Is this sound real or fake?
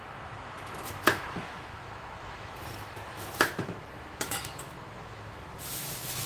fake